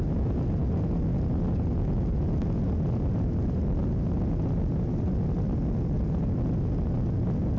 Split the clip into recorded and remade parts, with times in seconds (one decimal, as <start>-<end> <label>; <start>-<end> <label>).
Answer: 0.0-7.6 recorded